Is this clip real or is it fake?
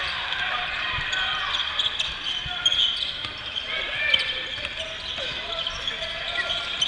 real